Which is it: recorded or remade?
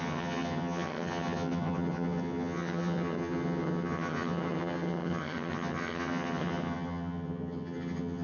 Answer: remade